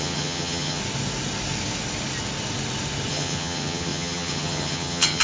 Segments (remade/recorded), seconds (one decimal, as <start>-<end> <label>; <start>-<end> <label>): 0.0-0.8 remade; 0.8-3.1 recorded; 3.1-5.2 remade